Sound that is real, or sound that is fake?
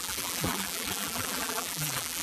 fake